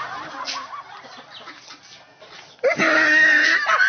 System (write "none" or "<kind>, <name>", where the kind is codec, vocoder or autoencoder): none